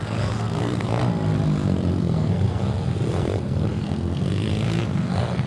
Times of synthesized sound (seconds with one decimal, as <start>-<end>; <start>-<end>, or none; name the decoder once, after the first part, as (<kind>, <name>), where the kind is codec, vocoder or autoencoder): 0.0-1.0 (codec, SNAC); 2.0-2.6; 3.1-5.5